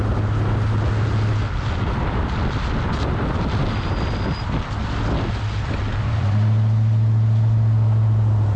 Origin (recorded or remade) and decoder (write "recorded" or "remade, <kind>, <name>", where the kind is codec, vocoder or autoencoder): recorded